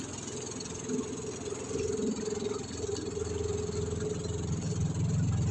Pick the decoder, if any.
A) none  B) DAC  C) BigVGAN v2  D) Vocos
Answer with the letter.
A